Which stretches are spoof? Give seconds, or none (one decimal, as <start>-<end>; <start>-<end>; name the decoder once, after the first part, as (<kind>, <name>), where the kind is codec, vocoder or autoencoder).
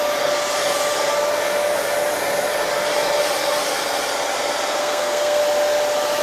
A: 4.8-5.4 (codec, SNAC)